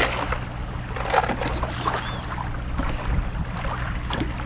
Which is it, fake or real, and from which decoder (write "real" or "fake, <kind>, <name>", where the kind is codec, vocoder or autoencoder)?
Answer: real